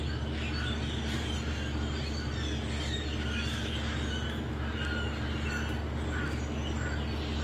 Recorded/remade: recorded